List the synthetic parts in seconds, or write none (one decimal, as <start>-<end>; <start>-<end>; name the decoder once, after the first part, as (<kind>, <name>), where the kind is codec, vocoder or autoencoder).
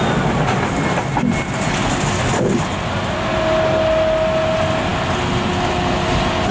none